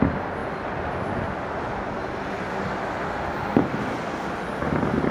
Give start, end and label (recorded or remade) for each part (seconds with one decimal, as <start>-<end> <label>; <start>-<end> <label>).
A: 0.0-5.1 recorded